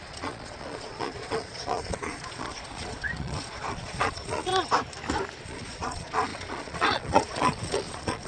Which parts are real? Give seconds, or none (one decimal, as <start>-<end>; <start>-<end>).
4.5-5.4